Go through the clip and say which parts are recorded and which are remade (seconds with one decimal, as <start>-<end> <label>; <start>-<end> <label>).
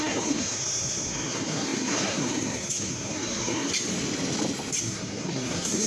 0.0-3.7 remade; 3.7-4.8 recorded; 4.8-5.9 remade